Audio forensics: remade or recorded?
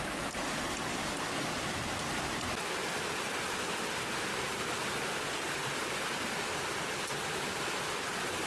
recorded